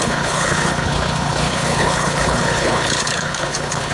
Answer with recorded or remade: remade